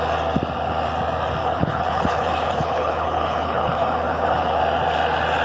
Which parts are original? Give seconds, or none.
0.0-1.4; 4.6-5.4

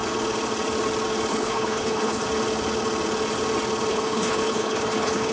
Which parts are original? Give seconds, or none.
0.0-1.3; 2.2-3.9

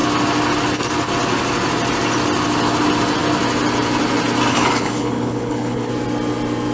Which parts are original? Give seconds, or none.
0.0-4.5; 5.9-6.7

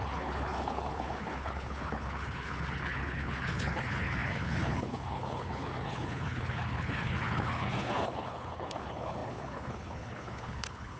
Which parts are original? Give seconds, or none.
none

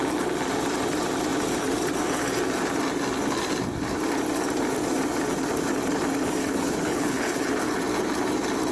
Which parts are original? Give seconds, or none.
0.0-6.4; 7.8-8.7

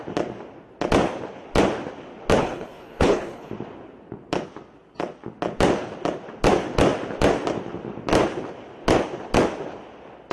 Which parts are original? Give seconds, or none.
0.0-2.4; 3.5-10.3

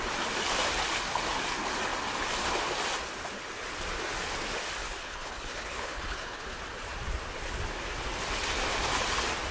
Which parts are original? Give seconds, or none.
0.0-4.8; 6.6-9.5